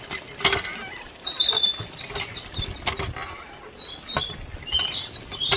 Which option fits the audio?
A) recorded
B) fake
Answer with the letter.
A